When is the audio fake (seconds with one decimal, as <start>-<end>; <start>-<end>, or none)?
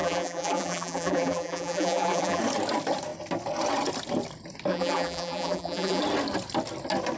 0.0-2.4; 4.7-6.0